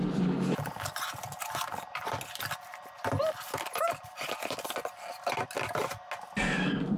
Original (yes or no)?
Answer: yes